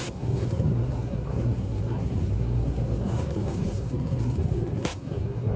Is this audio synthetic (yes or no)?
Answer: yes